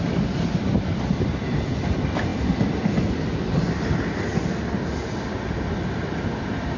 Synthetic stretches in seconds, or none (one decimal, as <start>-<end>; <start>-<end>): none